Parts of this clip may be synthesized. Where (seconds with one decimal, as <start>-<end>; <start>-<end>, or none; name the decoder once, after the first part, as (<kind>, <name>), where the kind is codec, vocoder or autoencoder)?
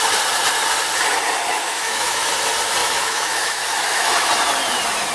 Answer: 1.5-2.3 (autoencoder, DAC-VAE); 2.8-4.3